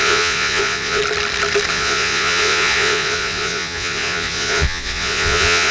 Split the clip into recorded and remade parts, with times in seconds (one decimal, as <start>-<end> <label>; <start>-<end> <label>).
0.0-1.0 remade; 1.0-1.7 recorded; 1.7-5.7 remade